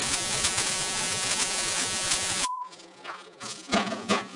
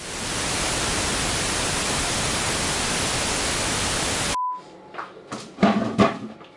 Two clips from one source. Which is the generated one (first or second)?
first